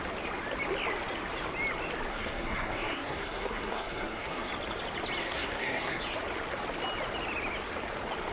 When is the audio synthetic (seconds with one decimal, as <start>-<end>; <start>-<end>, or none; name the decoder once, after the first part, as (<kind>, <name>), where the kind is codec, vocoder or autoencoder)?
2.1-4.5 (codec, SNAC); 5.2-6.0